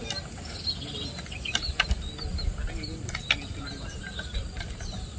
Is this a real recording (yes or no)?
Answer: yes